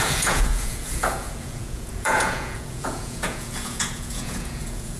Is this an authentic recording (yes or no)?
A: no